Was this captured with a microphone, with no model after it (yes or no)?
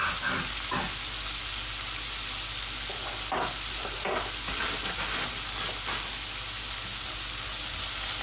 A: yes